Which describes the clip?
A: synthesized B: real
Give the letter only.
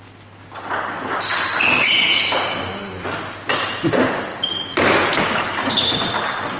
B